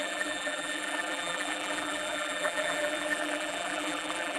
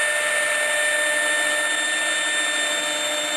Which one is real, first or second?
second